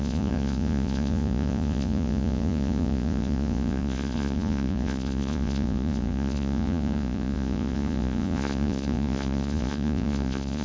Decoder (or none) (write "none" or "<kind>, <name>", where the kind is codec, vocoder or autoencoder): vocoder, Vocos